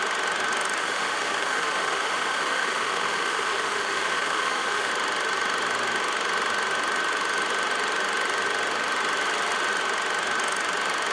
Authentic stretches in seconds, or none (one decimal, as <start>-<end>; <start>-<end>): 0.0-0.8; 4.9-11.1